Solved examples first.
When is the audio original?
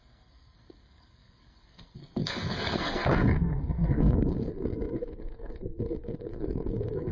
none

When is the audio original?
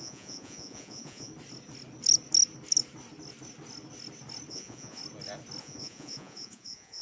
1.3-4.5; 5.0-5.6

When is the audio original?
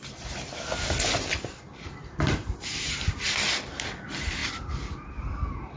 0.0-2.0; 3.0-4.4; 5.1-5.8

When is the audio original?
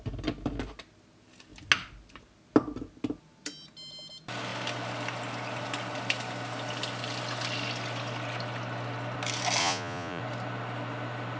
0.0-9.6; 10.2-11.4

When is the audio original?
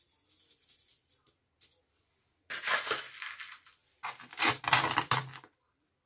0.0-6.1